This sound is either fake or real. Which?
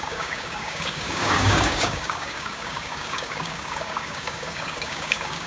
fake